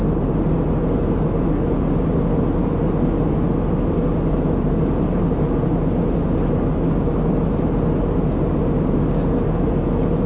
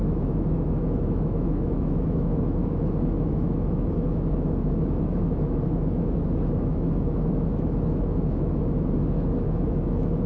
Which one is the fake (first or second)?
second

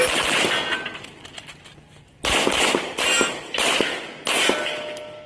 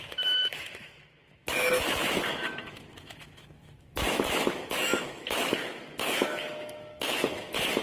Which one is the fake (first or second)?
second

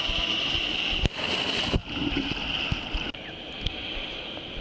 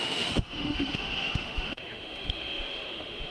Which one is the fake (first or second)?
second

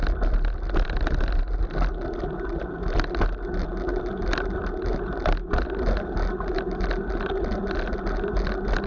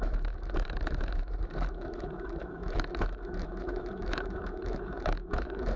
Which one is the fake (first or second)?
second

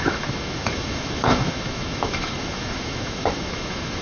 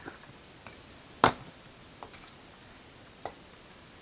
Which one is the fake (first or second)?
first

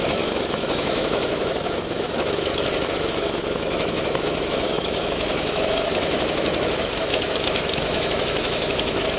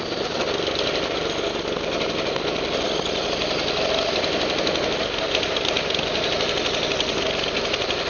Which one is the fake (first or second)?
first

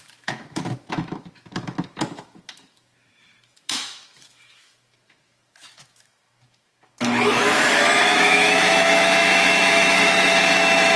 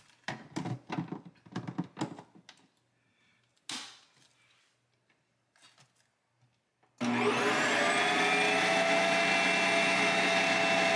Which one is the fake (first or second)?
first